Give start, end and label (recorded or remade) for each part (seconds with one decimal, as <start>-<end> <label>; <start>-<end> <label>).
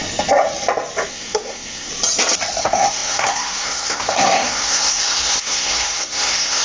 0.0-1.1 recorded; 1.1-1.9 remade; 1.9-2.6 recorded; 2.6-6.6 remade